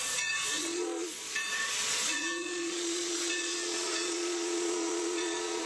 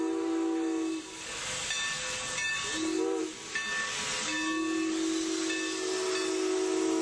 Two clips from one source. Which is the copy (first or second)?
first